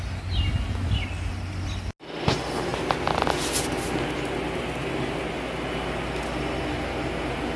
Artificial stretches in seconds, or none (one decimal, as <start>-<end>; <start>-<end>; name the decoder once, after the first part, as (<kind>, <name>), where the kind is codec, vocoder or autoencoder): none